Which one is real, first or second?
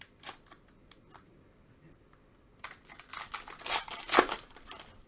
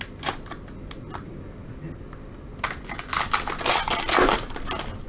second